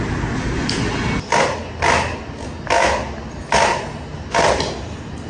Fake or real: real